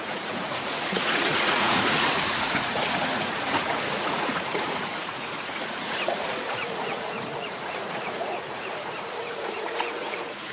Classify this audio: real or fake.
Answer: fake